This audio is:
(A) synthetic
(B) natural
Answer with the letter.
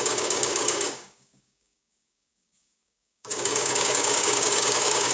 A